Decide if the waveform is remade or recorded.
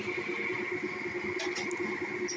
recorded